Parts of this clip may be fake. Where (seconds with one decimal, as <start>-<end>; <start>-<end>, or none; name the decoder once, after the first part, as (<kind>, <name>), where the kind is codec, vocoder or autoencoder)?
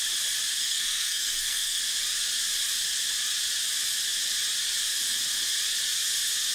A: 0.6-1.8 (codec, SNAC)